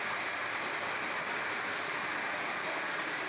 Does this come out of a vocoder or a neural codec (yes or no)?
no